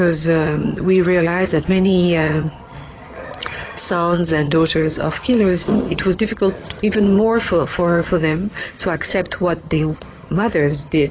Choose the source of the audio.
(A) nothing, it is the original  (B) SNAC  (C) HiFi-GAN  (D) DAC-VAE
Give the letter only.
C